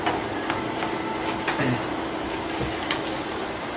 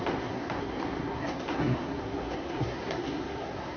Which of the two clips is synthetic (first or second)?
second